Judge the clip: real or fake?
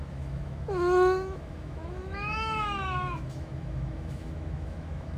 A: fake